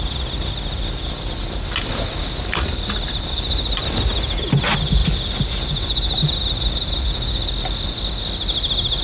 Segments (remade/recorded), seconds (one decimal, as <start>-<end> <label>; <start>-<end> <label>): 0.0-9.0 recorded